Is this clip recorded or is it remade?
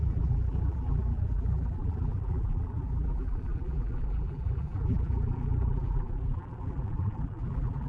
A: remade